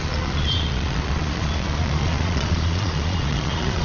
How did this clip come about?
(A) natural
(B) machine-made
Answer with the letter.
B